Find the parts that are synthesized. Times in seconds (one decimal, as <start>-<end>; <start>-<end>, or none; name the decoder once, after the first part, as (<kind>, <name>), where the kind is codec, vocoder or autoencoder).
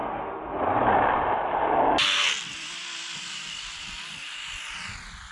0.0-0.6 (autoencoder, DAC-VAE)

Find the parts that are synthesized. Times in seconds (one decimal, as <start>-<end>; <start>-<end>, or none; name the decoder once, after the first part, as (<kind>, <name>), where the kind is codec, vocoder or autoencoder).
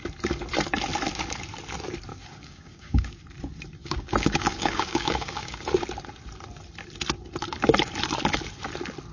2.1-3.2 (codec, DAC); 3.8-5.7